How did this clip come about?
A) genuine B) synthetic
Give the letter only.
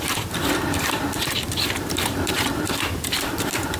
B